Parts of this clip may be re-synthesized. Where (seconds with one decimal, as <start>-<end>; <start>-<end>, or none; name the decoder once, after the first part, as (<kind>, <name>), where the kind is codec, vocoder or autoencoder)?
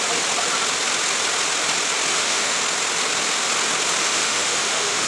2.1-2.6 (autoencoder, DAC-VAE); 4.0-5.1